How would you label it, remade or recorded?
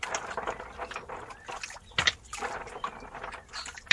recorded